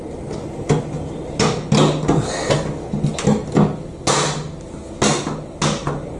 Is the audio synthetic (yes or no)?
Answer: no